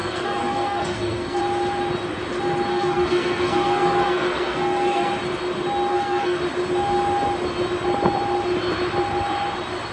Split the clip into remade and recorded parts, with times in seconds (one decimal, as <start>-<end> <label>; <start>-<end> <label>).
0.0-1.4 remade; 1.4-2.7 recorded; 2.7-5.1 remade; 5.1-5.9 recorded; 5.9-6.4 remade; 6.4-9.9 recorded